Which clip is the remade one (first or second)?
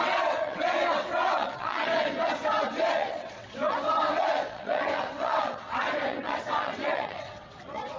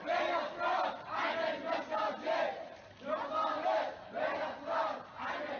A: first